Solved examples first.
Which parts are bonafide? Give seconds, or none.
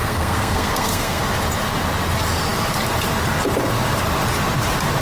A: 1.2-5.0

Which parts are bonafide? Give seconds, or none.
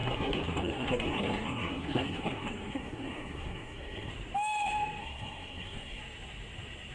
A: 4.1-5.0; 6.0-6.9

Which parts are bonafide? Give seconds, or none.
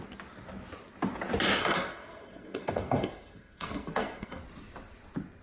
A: 0.0-1.6; 4.4-5.4